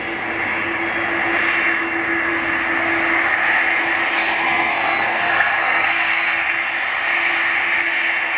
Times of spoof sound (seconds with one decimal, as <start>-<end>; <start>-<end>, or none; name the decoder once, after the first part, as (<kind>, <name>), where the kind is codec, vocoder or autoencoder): 4.1-6.5 (codec, SNAC)